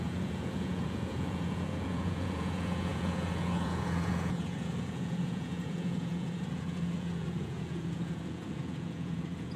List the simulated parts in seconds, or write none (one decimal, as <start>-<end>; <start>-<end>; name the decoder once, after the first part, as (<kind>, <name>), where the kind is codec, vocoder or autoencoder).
0.0-9.6 (vocoder, Vocos)